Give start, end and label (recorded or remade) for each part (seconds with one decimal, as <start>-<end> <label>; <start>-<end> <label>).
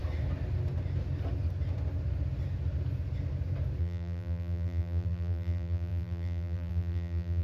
0.0-3.8 recorded; 3.8-7.4 remade